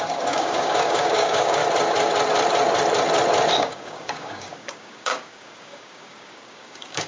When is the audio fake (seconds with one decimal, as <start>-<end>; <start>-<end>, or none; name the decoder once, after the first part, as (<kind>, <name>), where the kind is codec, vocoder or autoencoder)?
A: 0.0-1.6 (codec, DAC); 3.5-7.1

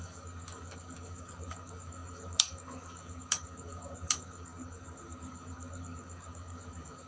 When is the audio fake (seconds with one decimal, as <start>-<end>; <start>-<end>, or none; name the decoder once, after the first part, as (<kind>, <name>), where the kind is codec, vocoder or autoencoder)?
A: 0.0-7.1 (codec, DAC)

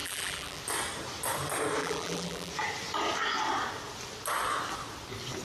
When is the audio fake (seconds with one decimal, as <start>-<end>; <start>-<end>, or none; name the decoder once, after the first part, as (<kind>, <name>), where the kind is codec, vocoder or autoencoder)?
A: 0.0-0.6 (vocoder, BigVGAN v2); 1.8-2.5